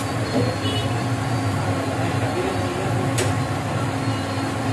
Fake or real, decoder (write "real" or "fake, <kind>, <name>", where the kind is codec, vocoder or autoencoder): real